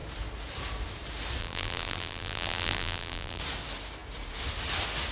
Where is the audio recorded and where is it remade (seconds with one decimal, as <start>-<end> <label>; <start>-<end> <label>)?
0.0-1.4 recorded; 1.4-3.4 remade; 3.4-5.1 recorded